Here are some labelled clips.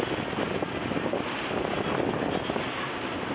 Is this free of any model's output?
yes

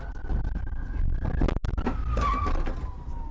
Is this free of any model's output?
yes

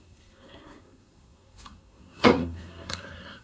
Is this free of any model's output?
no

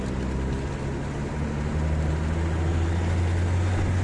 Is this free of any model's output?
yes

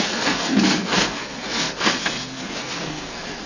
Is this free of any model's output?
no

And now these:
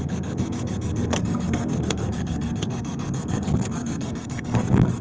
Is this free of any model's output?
no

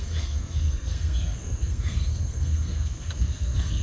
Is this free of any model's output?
no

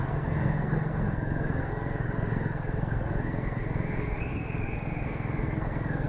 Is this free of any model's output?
no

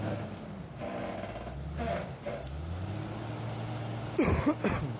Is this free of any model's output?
yes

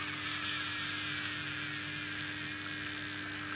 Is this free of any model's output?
yes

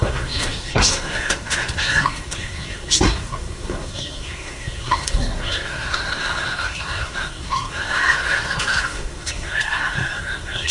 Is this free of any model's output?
no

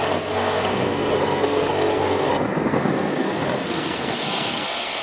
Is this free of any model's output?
no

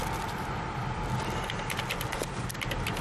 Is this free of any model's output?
yes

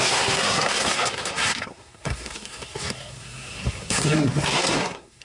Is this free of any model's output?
no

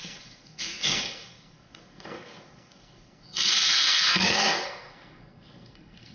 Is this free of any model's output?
no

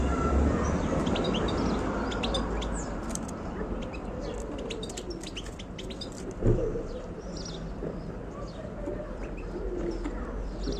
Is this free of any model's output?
yes